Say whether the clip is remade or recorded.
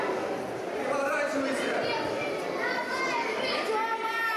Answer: recorded